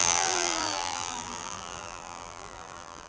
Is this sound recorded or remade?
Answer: remade